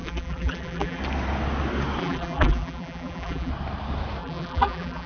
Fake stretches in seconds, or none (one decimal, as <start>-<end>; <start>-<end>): 0.0-1.0; 2.0-3.5; 4.2-5.1